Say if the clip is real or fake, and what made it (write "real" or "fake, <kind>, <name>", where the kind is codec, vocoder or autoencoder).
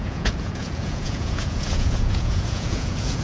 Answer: fake, vocoder, Vocos